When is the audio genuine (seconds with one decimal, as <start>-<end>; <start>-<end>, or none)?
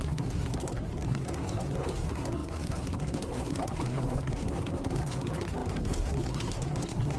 none